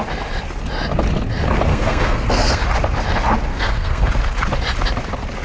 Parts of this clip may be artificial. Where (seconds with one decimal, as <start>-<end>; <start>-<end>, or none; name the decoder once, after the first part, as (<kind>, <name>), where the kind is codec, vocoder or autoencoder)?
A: 1.7-2.6 (codec, SNAC); 3.5-4.1